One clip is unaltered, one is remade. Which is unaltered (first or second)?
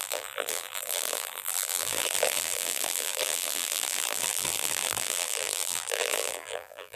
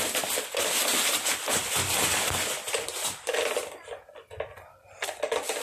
second